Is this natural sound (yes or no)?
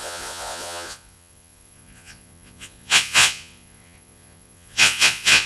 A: no